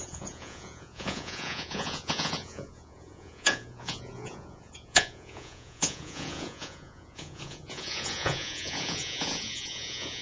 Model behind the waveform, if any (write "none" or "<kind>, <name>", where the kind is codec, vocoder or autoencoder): vocoder, Vocos